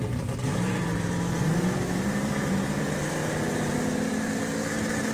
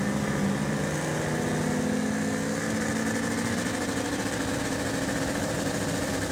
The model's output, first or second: first